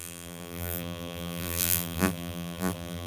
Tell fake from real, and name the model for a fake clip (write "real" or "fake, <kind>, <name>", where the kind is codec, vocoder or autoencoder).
fake, vocoder, BigVGAN v2